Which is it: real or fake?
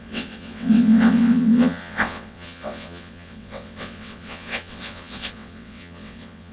fake